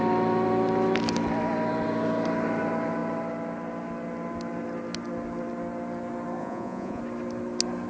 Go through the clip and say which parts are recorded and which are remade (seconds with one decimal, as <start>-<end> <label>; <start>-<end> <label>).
0.0-6.4 recorded; 6.4-7.0 remade; 7.0-7.9 recorded